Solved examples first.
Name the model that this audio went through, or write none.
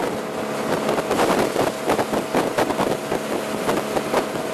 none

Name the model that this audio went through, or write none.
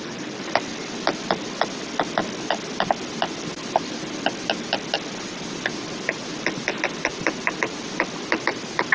none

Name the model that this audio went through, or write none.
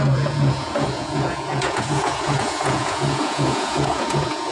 vocoder, Vocos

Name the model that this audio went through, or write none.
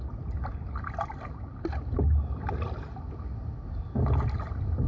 none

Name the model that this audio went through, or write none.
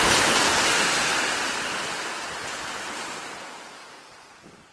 vocoder, BigVGAN v2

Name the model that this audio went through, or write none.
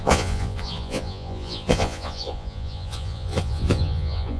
vocoder, Vocos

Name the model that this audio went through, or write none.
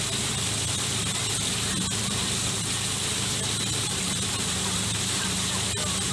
none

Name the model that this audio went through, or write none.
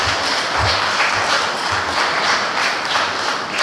none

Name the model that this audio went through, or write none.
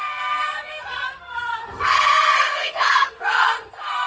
codec, SNAC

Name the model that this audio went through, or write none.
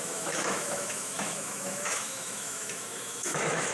autoencoder, DAC-VAE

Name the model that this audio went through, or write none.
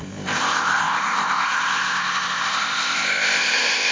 codec, ZipCodec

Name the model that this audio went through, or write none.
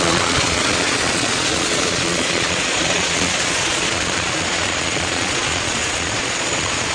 vocoder, Vocos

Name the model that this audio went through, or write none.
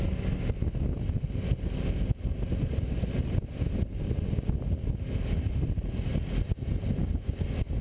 none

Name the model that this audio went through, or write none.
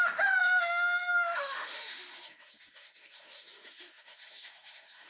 autoencoder, DAC-VAE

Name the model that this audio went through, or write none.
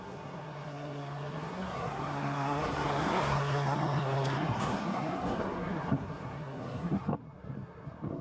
codec, SNAC